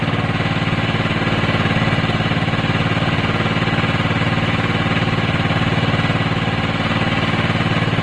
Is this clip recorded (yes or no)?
yes